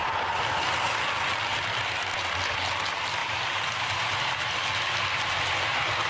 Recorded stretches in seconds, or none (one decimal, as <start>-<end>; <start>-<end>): 0.0-1.5; 2.3-3.2; 4.2-6.1